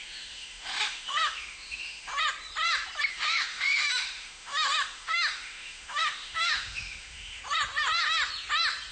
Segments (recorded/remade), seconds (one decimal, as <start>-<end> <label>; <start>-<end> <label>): 0.0-2.1 remade; 2.1-3.1 recorded; 3.1-7.4 remade; 7.4-8.9 recorded